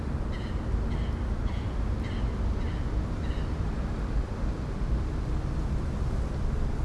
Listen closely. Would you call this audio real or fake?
real